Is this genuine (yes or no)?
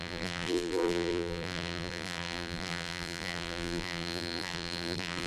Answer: no